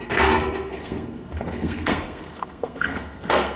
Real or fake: fake